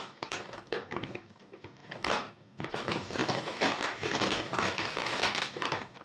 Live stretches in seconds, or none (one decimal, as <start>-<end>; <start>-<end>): none